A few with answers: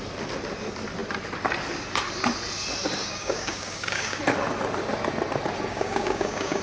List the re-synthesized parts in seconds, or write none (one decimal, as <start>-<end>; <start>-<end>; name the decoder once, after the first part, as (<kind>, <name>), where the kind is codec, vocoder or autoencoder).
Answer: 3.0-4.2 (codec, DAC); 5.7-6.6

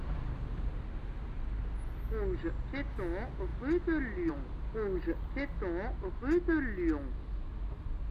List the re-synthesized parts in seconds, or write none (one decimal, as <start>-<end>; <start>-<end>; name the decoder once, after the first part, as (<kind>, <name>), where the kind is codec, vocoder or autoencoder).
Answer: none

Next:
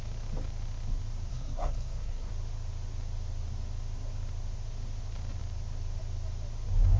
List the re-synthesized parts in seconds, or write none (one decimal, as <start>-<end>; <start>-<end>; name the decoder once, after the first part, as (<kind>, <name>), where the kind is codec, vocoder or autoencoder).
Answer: 1.3-2.3 (codec, SNAC)

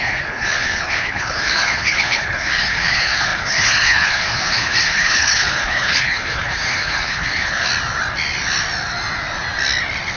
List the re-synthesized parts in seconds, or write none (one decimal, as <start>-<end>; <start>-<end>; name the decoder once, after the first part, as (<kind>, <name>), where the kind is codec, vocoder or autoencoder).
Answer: 0.0-7.7 (codec, HILCodec)